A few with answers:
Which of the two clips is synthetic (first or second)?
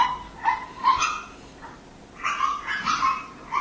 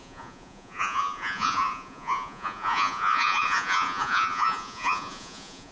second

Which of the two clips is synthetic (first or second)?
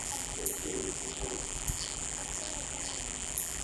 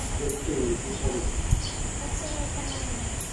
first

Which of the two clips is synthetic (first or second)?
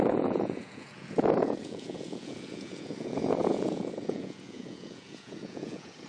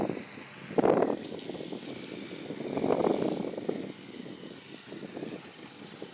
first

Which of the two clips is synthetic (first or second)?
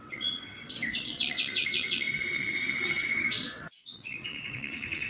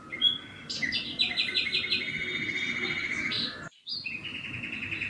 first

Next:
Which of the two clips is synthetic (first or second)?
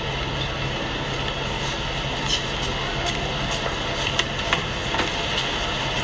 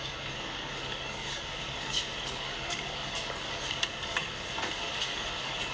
second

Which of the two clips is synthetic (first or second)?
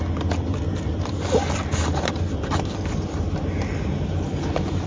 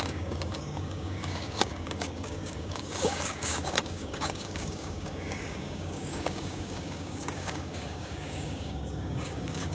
second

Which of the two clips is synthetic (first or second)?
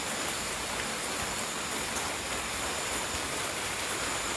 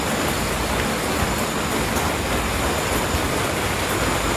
first